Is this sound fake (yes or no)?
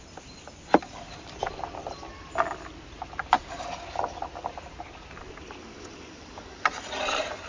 no